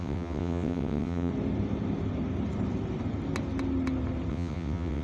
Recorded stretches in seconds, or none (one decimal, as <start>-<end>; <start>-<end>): 1.3-4.3